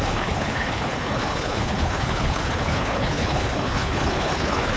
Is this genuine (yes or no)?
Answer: no